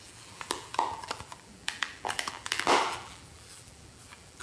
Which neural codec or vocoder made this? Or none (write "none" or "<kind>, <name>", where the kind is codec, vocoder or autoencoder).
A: vocoder, BigVGAN v2